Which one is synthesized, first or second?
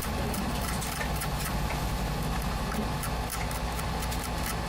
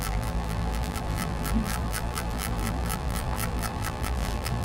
second